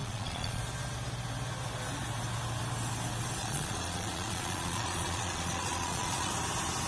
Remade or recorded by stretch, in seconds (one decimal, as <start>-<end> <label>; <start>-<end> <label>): 0.0-0.6 remade; 0.6-3.4 recorded; 3.4-6.3 remade; 6.3-6.9 recorded